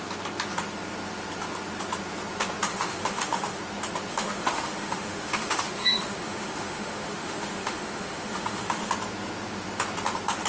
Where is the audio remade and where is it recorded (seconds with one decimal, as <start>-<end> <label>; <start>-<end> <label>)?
0.0-2.7 recorded; 2.7-3.6 remade; 3.6-4.1 recorded; 4.1-8.9 remade; 8.9-10.5 recorded